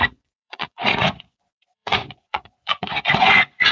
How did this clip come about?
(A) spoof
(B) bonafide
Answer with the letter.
A